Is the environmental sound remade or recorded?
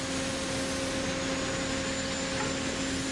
recorded